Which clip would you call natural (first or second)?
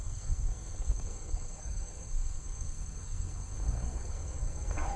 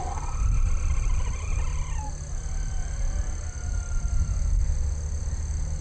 second